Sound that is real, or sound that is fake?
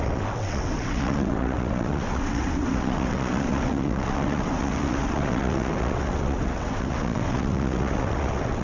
fake